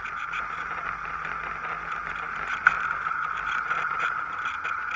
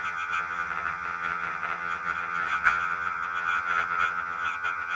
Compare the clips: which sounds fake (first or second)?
second